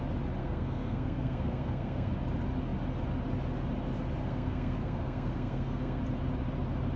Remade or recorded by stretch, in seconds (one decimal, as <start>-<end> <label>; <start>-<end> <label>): 0.0-0.4 recorded; 0.4-2.1 remade; 2.1-4.2 recorded; 4.2-6.0 remade; 6.0-7.0 recorded